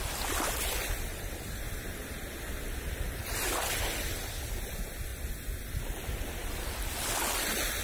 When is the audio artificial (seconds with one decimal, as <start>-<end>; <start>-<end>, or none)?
none